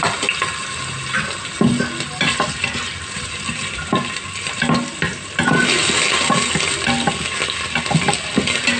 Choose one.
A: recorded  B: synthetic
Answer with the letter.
A